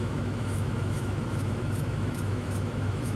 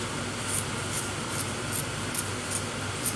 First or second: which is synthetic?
first